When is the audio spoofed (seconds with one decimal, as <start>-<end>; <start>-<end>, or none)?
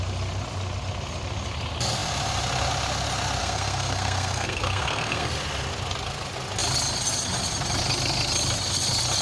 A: 3.4-5.3